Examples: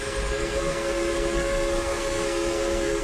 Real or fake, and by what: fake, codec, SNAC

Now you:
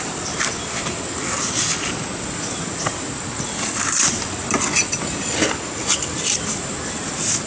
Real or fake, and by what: real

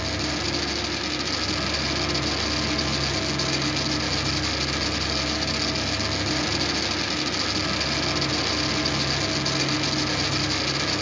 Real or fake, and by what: real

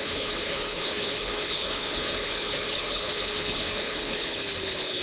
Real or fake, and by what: fake, codec, HILCodec